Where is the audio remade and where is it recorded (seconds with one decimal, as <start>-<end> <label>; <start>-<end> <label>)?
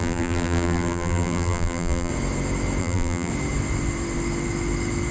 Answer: 0.0-2.1 remade; 2.1-2.8 recorded; 2.8-3.3 remade; 3.3-5.1 recorded